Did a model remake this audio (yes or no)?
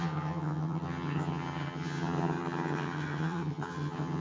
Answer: yes